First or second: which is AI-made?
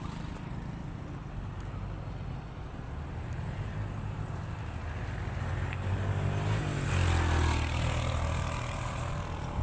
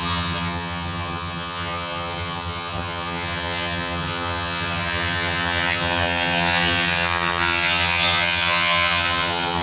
second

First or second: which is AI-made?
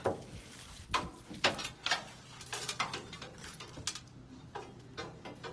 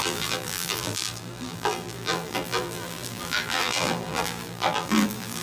second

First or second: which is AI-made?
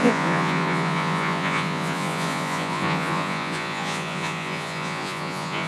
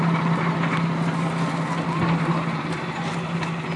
first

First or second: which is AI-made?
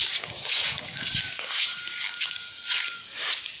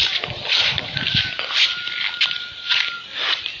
first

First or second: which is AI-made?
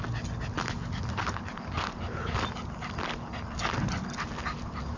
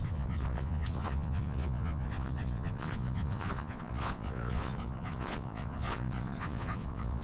second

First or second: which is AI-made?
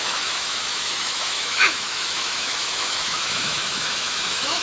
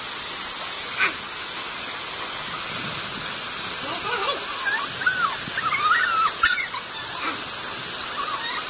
first